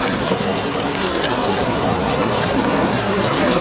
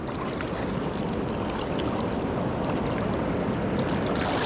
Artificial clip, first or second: first